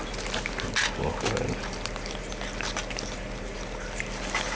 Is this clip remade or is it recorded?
recorded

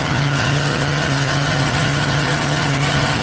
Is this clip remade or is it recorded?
remade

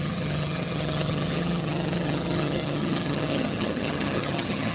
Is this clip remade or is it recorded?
remade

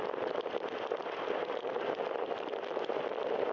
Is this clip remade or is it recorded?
recorded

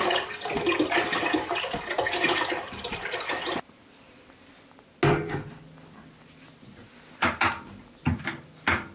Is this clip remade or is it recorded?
recorded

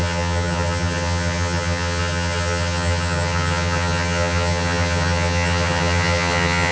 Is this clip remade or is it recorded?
remade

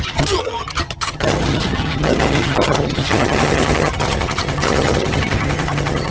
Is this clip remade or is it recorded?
remade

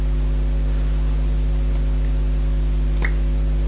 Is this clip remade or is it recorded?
recorded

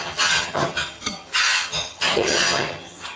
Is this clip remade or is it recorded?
remade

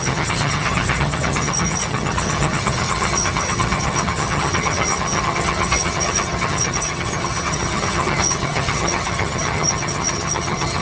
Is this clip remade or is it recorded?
remade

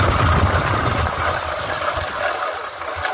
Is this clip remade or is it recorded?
recorded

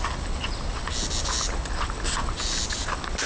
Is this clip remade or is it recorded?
recorded